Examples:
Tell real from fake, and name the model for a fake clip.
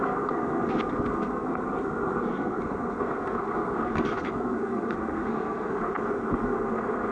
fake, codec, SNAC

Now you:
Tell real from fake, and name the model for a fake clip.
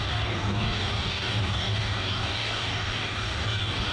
fake, codec, DAC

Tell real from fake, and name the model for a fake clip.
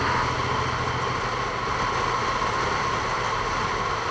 real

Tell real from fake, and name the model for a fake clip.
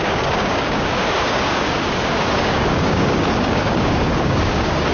fake, codec, DAC